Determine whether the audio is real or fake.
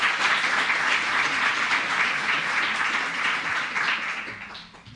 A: real